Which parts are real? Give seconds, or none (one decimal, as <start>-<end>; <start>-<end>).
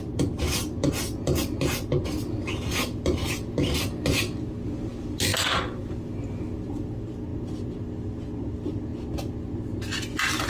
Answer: 0.0-10.5